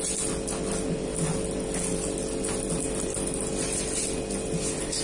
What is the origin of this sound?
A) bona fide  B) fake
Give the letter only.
A